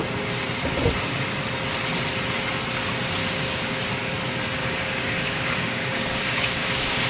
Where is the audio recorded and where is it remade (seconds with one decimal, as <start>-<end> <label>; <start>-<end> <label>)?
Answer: 0.0-3.2 recorded; 3.2-3.8 remade; 3.8-4.6 recorded; 4.6-7.1 remade